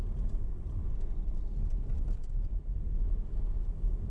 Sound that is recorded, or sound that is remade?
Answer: recorded